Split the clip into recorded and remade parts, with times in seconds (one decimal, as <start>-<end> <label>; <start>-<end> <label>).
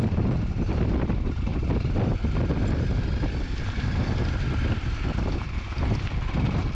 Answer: 0.0-6.7 recorded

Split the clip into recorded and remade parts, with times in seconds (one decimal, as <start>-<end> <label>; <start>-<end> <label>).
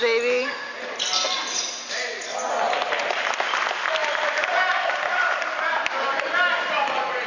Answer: 0.0-4.0 recorded; 4.0-5.9 remade; 5.9-7.3 recorded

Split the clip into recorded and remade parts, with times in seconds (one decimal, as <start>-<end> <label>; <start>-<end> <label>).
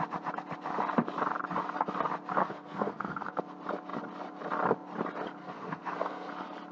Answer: 0.0-2.4 recorded; 2.4-3.4 remade; 3.4-5.4 recorded; 5.4-6.3 remade; 6.3-6.7 recorded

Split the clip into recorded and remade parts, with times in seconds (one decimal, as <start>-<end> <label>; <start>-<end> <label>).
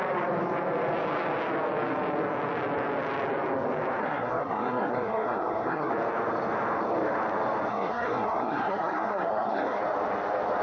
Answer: 0.0-4.0 recorded; 4.0-5.9 remade; 5.9-7.7 recorded; 7.7-9.8 remade; 9.8-10.6 recorded